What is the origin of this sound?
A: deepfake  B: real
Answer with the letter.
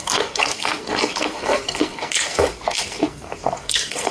A